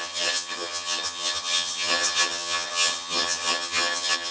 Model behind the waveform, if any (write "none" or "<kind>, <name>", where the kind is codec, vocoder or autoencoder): vocoder, HiFi-GAN